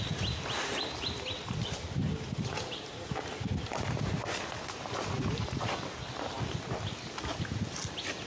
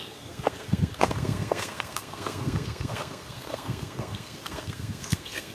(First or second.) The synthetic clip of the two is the second